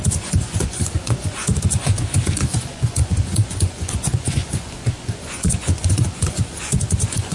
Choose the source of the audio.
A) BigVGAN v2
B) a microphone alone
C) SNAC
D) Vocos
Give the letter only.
D